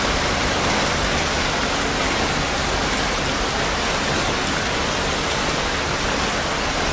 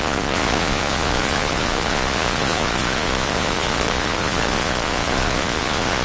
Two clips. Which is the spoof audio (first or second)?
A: second